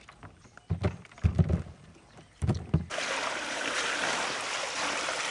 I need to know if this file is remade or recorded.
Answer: recorded